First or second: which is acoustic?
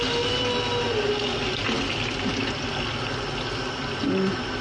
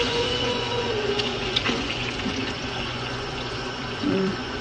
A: first